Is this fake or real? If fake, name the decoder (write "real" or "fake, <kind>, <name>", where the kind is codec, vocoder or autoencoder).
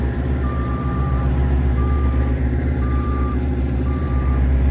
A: fake, vocoder, BigVGAN v2